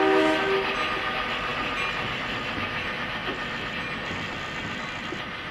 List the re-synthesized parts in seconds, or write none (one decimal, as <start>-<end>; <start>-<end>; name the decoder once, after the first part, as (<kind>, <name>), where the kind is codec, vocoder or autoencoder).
none